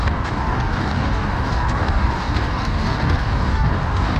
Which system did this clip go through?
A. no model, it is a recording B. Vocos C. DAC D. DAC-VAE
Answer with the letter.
C